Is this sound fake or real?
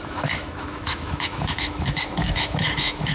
fake